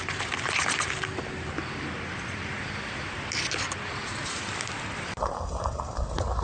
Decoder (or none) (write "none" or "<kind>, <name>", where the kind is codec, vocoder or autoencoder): vocoder, BigVGAN v2